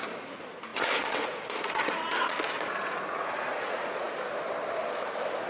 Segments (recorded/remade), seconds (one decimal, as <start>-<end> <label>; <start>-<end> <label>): 0.0-0.7 recorded; 0.7-2.3 remade; 2.3-2.8 recorded; 2.8-4.1 remade; 4.1-5.5 recorded